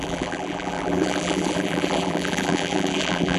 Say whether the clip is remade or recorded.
remade